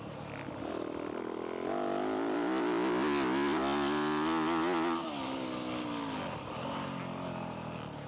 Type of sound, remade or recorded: recorded